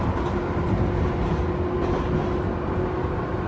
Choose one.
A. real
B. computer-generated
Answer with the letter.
A